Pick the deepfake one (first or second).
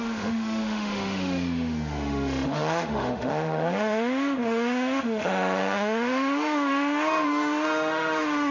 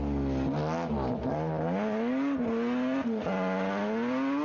first